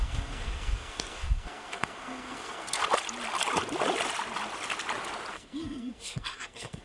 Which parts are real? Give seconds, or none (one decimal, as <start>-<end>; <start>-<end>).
2.8-5.3